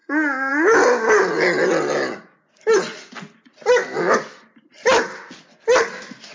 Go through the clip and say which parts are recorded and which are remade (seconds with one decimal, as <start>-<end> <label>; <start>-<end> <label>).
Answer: 0.0-6.3 recorded